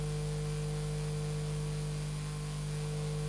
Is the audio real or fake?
real